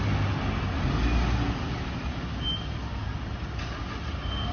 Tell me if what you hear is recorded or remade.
recorded